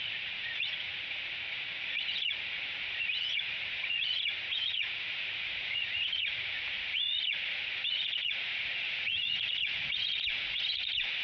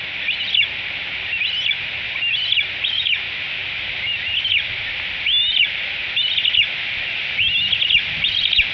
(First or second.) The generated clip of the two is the first